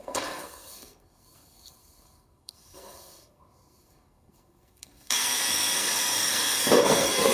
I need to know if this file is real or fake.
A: fake